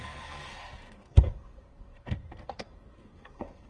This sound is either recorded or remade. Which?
remade